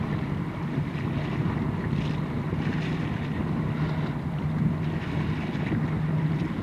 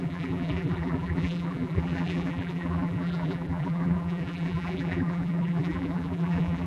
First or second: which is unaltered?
first